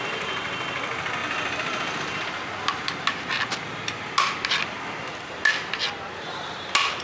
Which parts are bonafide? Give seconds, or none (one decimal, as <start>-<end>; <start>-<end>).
0.0-7.0